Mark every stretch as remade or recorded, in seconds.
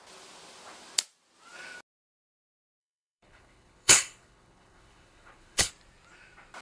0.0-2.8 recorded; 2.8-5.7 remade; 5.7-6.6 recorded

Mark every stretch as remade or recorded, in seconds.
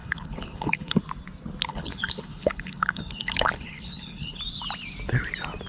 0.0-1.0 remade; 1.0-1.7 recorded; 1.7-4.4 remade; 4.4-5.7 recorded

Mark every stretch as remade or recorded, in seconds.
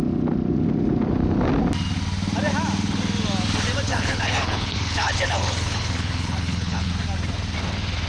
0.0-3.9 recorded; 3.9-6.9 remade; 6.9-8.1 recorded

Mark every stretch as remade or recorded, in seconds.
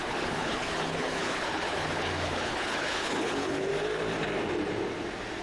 0.0-3.7 remade; 3.7-5.4 recorded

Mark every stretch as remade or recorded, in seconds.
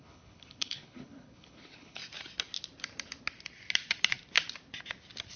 0.0-2.0 remade; 2.0-5.4 recorded